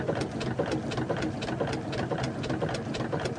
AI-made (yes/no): no